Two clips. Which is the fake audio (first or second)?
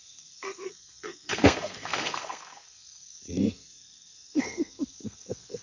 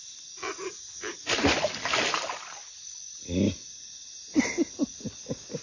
first